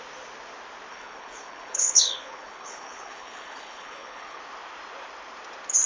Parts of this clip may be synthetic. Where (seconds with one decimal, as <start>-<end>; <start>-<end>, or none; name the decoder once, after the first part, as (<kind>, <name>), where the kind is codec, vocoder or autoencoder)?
0.9-4.4 (codec, HILCodec)